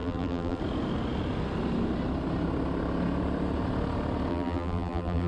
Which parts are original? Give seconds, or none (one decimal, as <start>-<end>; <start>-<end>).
0.6-4.3